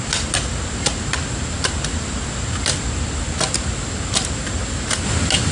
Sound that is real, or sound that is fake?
real